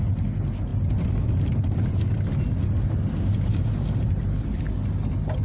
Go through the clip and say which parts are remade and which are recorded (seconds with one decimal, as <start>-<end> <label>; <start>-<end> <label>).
0.0-5.4 recorded